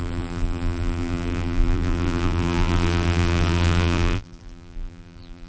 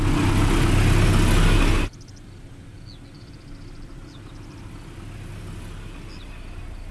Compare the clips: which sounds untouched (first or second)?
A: second